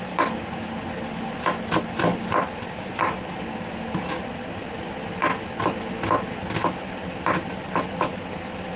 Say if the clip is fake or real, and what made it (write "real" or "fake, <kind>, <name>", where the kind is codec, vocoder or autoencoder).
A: real